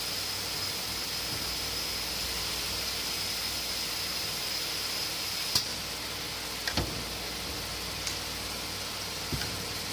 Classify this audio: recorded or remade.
recorded